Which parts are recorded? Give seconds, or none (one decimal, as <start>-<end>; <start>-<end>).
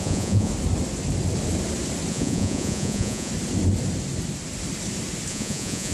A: 0.5-2.1; 3.3-5.3